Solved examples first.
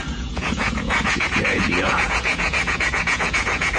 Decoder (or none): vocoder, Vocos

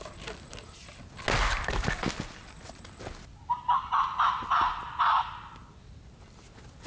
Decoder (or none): none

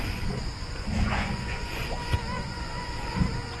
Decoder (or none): vocoder, Vocos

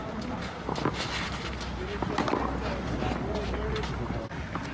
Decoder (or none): none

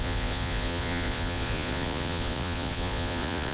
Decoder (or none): vocoder, Vocos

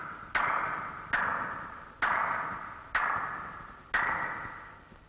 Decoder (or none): none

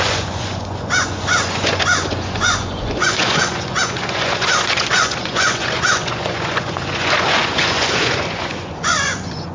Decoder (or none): vocoder, Vocos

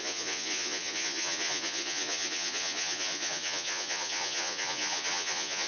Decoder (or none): vocoder, Vocos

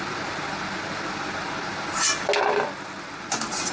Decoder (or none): none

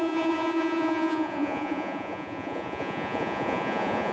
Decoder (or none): vocoder, Vocos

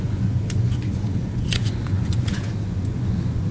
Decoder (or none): vocoder, Vocos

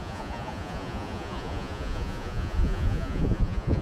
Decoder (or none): vocoder, Vocos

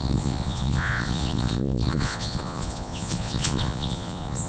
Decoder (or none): vocoder, Vocos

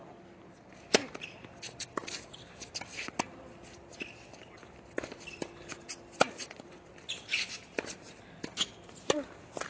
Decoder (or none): none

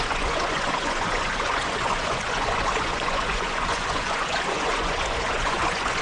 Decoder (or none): vocoder, Vocos